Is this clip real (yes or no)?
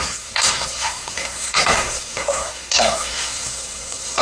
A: no